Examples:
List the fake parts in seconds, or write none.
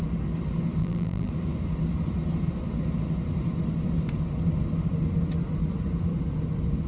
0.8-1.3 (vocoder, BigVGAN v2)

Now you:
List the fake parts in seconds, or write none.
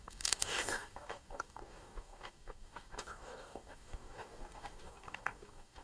0.0-5.8 (codec, DAC)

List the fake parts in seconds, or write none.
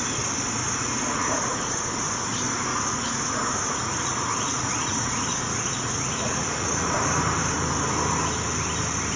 0.6-1.9 (vocoder, Vocos); 2.7-7.2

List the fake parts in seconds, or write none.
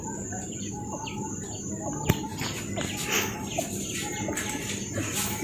none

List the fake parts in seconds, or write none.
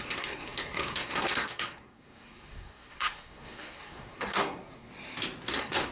0.0-4.9 (codec, SNAC); 5.5-5.9